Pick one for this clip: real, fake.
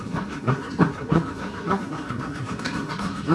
fake